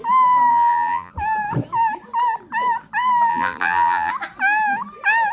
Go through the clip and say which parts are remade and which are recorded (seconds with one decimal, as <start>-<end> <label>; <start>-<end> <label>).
0.0-0.5 recorded; 0.5-1.1 remade; 1.1-3.3 recorded; 3.3-4.1 remade; 4.1-5.3 recorded

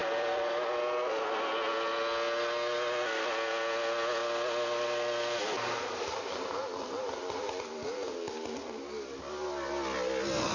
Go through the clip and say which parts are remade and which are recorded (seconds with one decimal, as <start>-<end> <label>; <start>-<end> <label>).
0.0-0.8 remade; 0.8-10.5 recorded

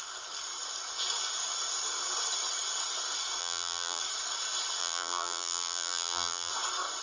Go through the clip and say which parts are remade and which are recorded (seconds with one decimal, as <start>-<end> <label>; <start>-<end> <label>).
0.0-3.4 recorded; 3.4-4.0 remade; 4.0-4.8 recorded; 4.8-6.5 remade; 6.5-7.0 recorded

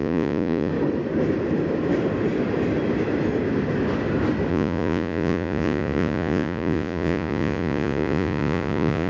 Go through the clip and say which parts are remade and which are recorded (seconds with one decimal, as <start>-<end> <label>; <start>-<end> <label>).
0.0-0.7 remade; 0.7-4.5 recorded; 4.5-9.1 remade

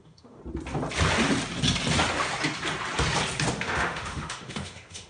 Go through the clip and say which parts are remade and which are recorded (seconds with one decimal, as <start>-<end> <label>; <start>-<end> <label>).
0.0-0.4 remade; 0.4-3.5 recorded; 3.5-5.1 remade

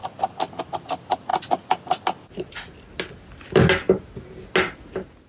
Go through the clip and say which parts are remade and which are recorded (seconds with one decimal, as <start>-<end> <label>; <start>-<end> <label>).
0.0-5.3 recorded